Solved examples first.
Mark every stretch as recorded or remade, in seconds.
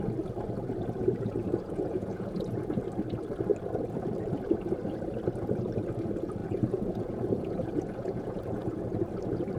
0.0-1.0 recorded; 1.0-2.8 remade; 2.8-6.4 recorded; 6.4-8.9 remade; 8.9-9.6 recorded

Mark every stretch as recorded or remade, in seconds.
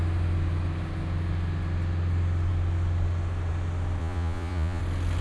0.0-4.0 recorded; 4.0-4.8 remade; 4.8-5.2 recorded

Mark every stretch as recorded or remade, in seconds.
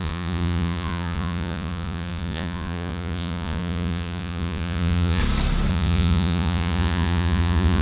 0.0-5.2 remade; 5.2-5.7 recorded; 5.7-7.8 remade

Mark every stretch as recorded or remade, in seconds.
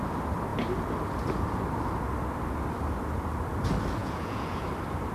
0.0-4.0 recorded; 4.0-4.6 remade; 4.6-5.1 recorded